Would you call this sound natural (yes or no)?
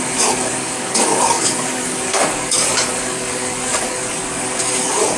no